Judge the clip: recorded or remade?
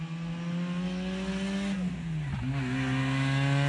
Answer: recorded